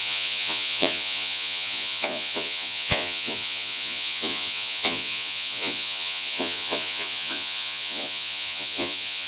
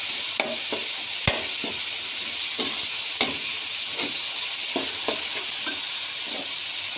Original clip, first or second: second